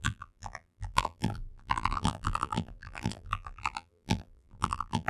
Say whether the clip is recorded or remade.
remade